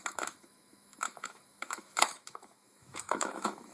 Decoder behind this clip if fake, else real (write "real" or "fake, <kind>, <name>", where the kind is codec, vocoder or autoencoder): fake, autoencoder, DAC-VAE